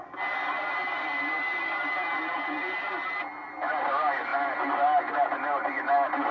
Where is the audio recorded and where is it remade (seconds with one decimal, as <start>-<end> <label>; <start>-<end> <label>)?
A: 0.0-6.3 recorded